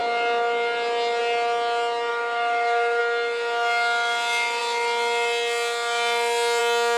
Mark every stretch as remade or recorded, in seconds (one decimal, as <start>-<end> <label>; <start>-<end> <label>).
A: 0.0-2.1 recorded; 2.1-3.0 remade; 3.0-7.0 recorded